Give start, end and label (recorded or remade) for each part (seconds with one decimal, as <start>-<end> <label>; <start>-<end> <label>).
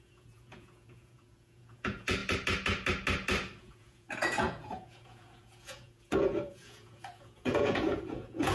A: 0.0-2.2 remade; 2.2-3.6 recorded; 3.6-8.5 remade